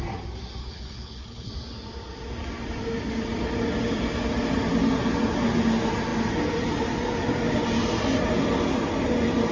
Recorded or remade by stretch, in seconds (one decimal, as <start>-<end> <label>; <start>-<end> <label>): 0.0-0.6 recorded; 0.6-1.5 remade; 1.5-9.5 recorded